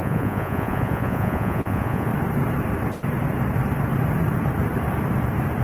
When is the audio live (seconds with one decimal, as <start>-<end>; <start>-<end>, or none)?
2.1-5.6